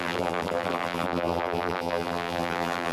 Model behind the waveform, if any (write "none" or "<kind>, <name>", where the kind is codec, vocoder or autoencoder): vocoder, BigVGAN v2